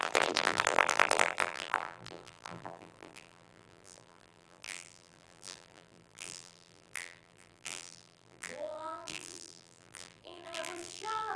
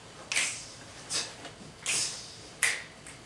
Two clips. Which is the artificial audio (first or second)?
first